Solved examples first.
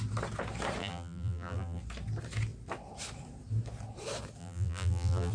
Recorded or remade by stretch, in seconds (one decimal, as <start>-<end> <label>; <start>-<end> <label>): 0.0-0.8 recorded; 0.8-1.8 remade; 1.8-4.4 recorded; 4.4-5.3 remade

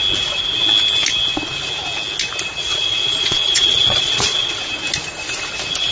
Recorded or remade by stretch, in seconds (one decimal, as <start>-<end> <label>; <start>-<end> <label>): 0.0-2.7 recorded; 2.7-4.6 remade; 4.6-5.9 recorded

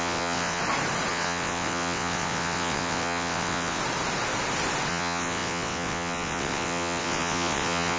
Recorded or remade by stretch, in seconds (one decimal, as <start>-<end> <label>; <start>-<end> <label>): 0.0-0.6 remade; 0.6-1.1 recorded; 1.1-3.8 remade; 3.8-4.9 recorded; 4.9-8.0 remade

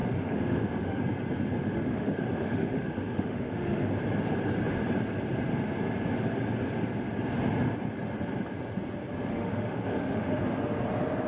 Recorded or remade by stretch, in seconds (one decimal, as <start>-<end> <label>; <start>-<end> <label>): 0.0-1.0 remade; 1.0-1.6 recorded; 1.6-3.9 remade; 3.9-9.3 recorded; 9.3-10.4 remade; 10.4-11.3 recorded

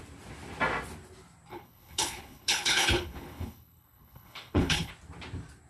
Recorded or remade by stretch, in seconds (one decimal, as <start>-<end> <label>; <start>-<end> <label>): 0.0-1.5 recorded; 1.5-4.9 remade; 4.9-5.7 recorded

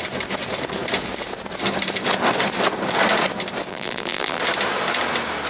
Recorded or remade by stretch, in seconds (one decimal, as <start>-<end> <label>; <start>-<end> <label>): 0.0-3.7 recorded; 3.7-4.4 remade; 4.4-5.5 recorded

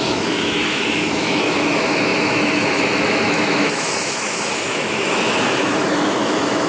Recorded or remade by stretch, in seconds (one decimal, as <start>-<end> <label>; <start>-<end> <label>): 0.0-6.7 remade

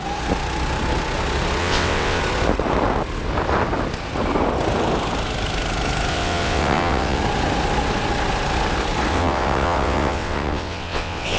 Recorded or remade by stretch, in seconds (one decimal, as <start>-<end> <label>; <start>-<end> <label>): 0.0-1.6 recorded; 1.6-2.2 remade; 2.2-6.1 recorded; 6.1-7.2 remade; 7.2-9.1 recorded; 9.1-11.4 remade